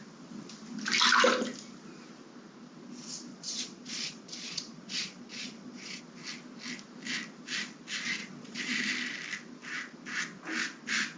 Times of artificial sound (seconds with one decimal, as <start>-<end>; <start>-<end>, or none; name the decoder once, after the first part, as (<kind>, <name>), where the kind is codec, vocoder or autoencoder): 3.3-6.0 (vocoder, Vocos); 8.2-8.7